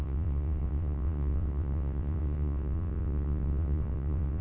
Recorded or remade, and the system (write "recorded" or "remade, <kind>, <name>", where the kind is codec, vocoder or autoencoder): remade, vocoder, WaveNeXt